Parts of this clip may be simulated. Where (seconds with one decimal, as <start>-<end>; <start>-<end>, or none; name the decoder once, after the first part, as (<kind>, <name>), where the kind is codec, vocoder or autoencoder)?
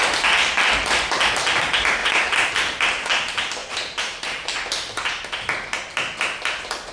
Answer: 2.0-2.5 (vocoder, BigVGAN v2); 3.6-4.6